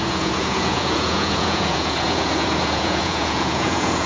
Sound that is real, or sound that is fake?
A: fake